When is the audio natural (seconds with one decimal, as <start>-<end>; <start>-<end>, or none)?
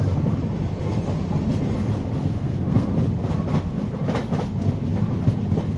0.0-2.2; 2.9-5.8